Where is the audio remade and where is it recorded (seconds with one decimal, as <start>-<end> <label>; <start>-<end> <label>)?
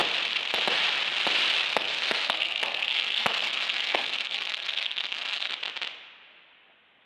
0.0-1.7 recorded; 1.7-5.5 remade; 5.5-7.1 recorded